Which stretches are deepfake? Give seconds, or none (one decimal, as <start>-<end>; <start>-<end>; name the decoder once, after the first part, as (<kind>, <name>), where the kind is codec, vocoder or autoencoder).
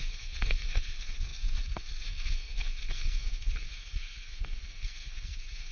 0.0-5.7 (codec, SNAC)